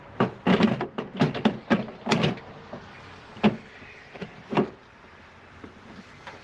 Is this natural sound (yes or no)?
yes